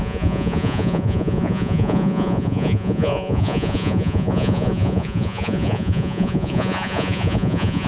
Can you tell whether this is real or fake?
fake